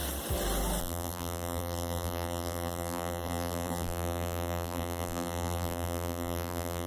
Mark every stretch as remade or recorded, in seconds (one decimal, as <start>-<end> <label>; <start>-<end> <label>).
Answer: 0.0-0.8 recorded; 0.8-6.9 remade